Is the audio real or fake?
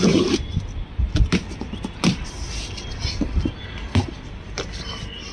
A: real